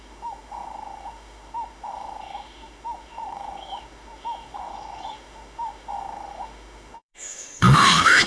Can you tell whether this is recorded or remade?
remade